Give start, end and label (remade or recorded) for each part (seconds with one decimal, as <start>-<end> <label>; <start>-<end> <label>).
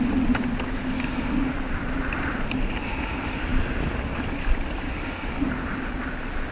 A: 0.0-6.5 recorded